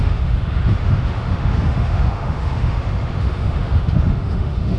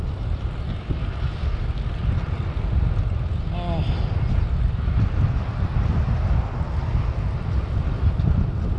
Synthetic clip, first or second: first